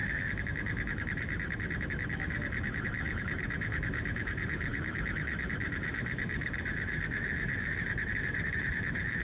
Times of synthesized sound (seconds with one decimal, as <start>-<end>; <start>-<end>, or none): 0.0-9.2